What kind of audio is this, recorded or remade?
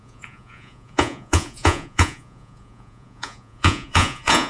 remade